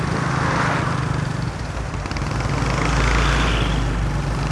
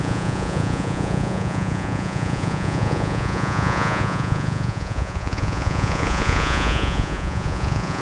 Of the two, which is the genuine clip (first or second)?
first